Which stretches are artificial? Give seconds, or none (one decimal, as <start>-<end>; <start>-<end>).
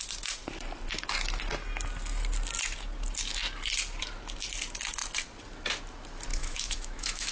6.3-7.3